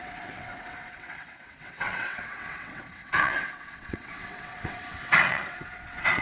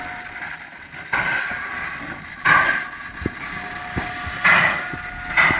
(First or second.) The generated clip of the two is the first